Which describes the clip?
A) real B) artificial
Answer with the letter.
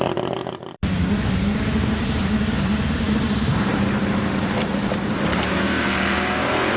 B